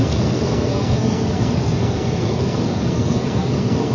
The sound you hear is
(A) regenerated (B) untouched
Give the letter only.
A